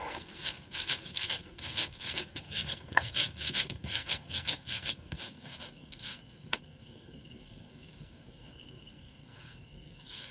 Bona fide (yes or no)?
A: no